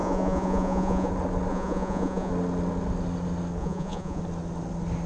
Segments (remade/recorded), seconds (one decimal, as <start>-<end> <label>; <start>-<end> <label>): 0.0-1.1 remade; 1.1-1.5 recorded; 1.5-2.3 remade; 2.3-3.6 recorded; 3.6-4.2 remade; 4.2-5.1 recorded